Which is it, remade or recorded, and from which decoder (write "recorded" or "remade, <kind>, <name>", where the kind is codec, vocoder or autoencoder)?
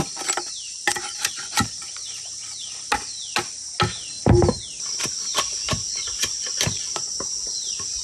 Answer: recorded